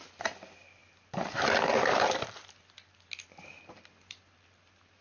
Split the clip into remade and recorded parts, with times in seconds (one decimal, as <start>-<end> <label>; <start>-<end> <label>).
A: 0.0-5.0 recorded